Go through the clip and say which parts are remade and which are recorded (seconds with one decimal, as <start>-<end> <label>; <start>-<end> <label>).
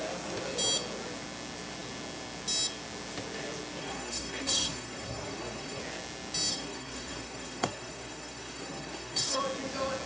0.0-3.8 recorded; 3.8-5.8 remade; 5.8-6.5 recorded; 6.5-9.4 remade; 9.4-10.1 recorded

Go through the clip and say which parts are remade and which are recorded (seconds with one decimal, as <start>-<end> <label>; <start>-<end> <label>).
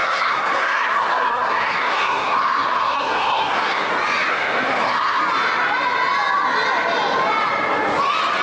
0.0-3.9 remade; 3.9-4.3 recorded; 4.3-5.2 remade; 5.2-8.4 recorded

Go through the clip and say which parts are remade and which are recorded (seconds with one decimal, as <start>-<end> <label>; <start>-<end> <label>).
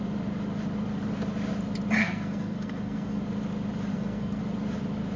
0.0-2.0 recorded; 2.0-3.2 remade; 3.2-3.9 recorded; 3.9-4.4 remade; 4.4-5.2 recorded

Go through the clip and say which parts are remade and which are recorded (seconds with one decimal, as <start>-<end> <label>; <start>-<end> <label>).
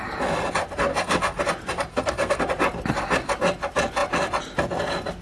0.0-0.9 recorded; 0.9-1.4 remade; 1.4-1.9 recorded; 1.9-2.4 remade; 2.4-5.2 recorded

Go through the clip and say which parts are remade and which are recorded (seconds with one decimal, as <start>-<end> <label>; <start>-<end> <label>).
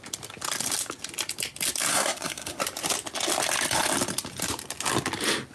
0.0-1.9 recorded; 1.9-2.6 remade; 2.6-5.5 recorded